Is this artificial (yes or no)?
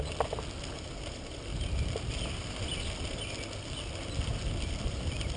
no